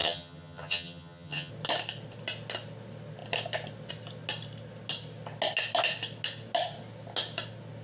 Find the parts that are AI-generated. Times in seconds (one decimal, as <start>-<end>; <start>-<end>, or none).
0.0-1.5